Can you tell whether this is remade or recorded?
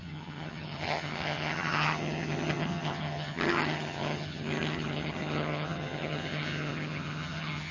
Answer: remade